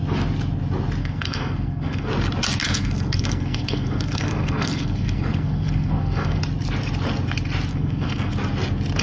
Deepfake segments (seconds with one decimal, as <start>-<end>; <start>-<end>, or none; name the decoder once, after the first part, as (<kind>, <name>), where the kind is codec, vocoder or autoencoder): 1.0-2.1 (codec, SNAC); 2.6-6.4; 7.7-8.3

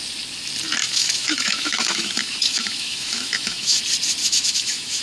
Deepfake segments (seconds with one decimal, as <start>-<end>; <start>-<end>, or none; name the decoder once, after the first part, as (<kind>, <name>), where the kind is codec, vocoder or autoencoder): 0.8-3.8 (autoencoder, DAC-VAE); 4.2-5.0

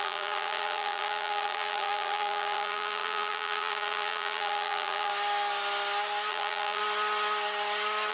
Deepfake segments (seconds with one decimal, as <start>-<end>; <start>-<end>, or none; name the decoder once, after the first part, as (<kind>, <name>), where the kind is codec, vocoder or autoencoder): 0.0-5.1 (vocoder, BigVGAN v2); 6.3-6.8

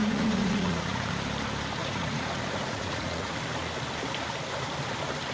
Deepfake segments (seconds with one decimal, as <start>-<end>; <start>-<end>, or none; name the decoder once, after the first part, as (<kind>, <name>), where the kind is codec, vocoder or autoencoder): 0.0-1.1 (vocoder, Vocos); 1.8-3.3

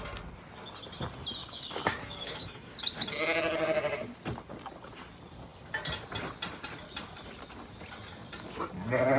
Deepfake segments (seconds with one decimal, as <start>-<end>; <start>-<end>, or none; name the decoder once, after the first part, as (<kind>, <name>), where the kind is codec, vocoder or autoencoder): 1.4-2.8 (codec, DAC)

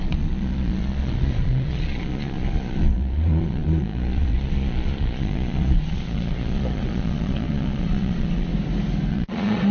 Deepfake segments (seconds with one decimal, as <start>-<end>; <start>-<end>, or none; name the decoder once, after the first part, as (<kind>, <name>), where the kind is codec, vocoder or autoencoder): 0.0-8.5 (vocoder, Vocos); 9.1-9.7

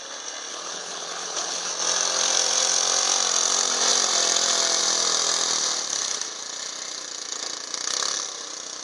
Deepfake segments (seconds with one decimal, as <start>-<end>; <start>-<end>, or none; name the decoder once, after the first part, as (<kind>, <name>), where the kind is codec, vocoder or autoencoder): 0.5-1.7 (codec, HILCodec)